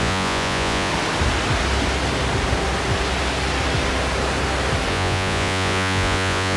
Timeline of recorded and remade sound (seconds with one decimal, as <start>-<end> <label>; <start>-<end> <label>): 0.0-0.9 remade; 0.9-4.9 recorded; 4.9-6.6 remade

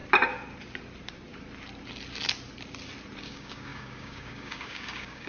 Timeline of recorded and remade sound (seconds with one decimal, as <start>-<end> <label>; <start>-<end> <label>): 0.0-3.2 recorded; 3.2-5.3 remade